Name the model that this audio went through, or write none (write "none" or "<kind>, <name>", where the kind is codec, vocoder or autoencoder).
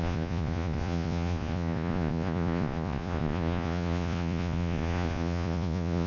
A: vocoder, Vocos